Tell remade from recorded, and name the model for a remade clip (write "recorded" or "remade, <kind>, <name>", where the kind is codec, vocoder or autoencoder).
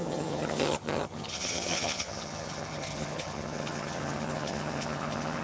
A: remade, vocoder, HiFi-GAN